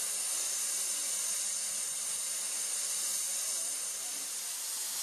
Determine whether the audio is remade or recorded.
recorded